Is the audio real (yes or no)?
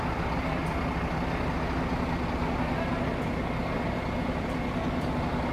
yes